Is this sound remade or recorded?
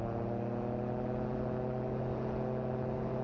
recorded